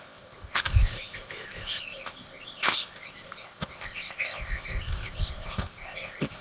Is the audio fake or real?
fake